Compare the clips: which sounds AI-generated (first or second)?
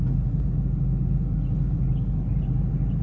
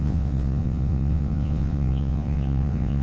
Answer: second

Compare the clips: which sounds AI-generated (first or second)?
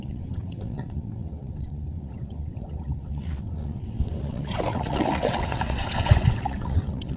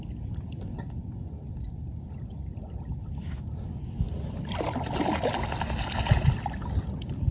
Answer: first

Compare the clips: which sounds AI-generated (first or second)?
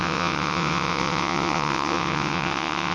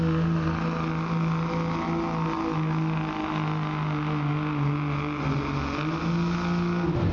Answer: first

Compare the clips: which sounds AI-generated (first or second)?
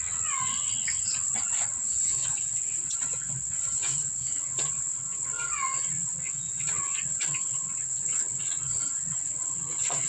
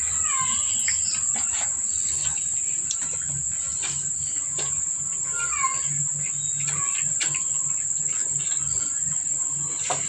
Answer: first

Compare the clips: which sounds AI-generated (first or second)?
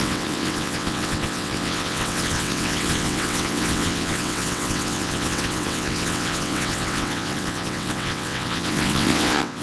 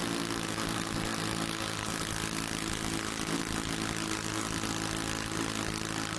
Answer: first